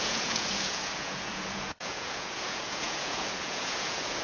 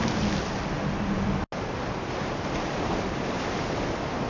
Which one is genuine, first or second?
second